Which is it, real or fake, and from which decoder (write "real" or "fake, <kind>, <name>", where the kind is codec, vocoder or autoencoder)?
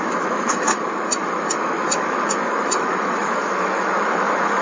fake, autoencoder, DAC-VAE